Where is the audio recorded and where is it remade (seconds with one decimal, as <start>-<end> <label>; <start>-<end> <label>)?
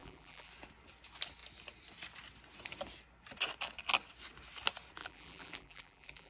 0.0-0.5 remade; 0.5-5.0 recorded; 5.0-6.3 remade